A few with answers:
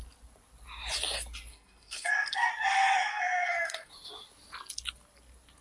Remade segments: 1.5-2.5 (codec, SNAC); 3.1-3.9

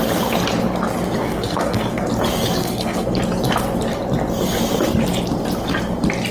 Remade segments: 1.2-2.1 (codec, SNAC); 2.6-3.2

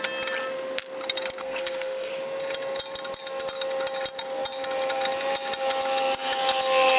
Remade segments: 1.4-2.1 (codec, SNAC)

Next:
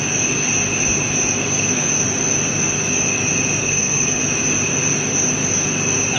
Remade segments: 1.4-1.9 (codec, SNAC); 3.6-4.2

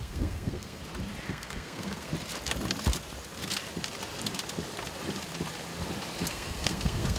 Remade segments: 0.0-0.8 (codec, SNAC); 1.3-2.1; 6.3-7.2